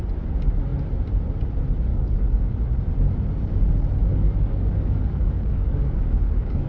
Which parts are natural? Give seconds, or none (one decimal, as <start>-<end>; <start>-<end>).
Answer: 0.0-1.9; 2.5-4.1